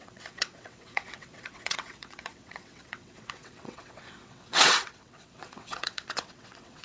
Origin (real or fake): fake